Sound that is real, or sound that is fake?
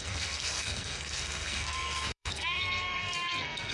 fake